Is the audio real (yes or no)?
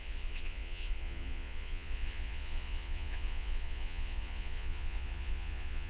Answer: no